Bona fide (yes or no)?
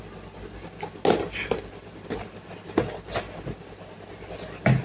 yes